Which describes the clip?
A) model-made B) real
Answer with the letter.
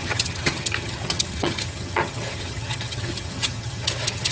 A